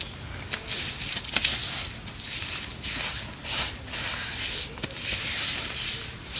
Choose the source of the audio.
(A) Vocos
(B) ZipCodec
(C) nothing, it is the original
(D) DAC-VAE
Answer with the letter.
C